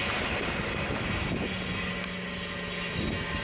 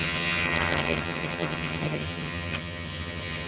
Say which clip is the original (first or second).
first